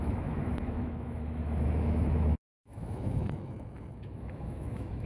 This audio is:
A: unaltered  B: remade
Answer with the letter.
B